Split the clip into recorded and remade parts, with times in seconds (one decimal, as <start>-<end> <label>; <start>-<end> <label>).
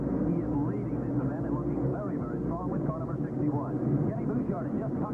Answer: 0.0-1.9 recorded; 1.9-5.1 remade